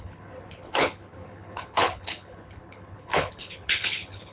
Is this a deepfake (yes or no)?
yes